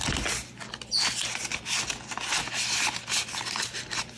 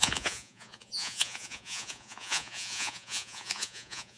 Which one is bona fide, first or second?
first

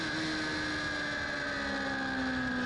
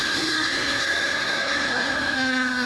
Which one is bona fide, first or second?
first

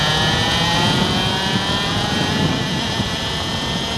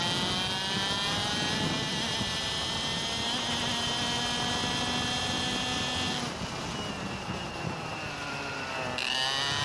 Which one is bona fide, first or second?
second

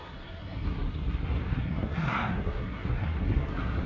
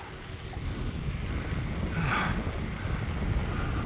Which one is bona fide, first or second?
second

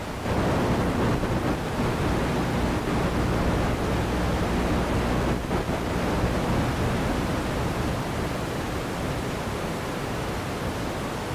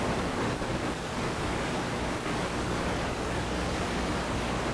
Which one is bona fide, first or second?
first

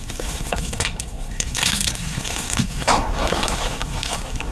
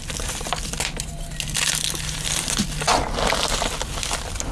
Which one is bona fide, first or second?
second